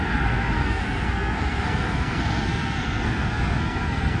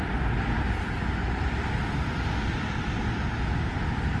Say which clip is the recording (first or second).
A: second